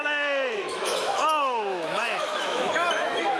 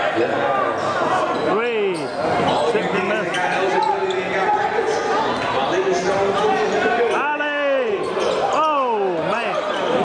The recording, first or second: second